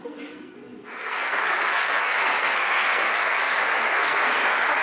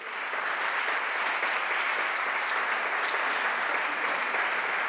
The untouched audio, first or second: second